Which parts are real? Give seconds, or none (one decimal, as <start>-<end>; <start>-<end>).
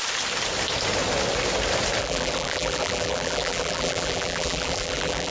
0.0-2.0